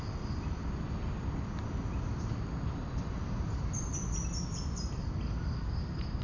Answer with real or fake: real